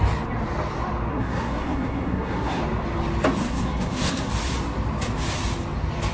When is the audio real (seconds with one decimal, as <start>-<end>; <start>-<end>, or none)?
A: 0.0-1.1; 2.6-3.4; 4.3-6.1